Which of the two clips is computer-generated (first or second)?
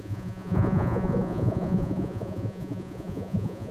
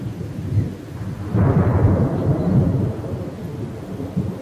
first